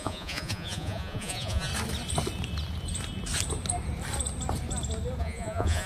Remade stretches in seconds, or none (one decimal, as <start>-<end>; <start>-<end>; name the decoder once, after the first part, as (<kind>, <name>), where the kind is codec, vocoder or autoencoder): 0.0-1.7 (vocoder, Vocos); 5.2-5.9